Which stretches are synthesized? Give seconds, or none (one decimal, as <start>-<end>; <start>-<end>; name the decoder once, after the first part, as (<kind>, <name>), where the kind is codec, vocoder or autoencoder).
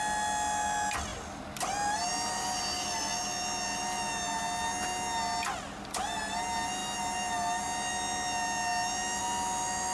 none